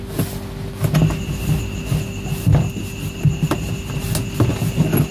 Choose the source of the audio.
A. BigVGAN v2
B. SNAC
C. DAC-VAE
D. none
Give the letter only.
D